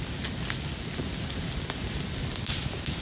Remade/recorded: recorded